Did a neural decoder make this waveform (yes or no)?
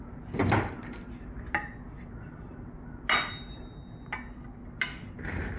no